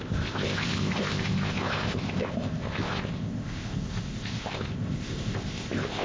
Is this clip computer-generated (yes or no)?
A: yes